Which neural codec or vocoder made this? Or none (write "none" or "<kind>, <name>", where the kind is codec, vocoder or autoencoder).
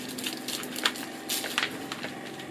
none